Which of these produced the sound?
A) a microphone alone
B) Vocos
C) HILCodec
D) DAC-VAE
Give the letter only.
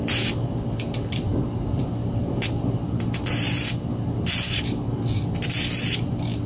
A